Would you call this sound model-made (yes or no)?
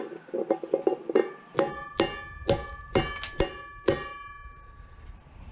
no